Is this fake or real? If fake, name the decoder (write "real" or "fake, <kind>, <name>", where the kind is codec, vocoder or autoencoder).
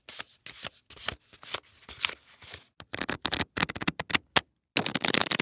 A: real